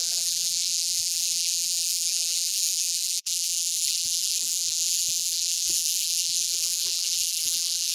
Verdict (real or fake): fake